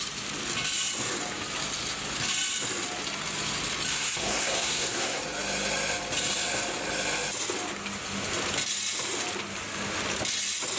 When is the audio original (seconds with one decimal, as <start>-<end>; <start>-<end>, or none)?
0.0-3.9; 5.2-10.8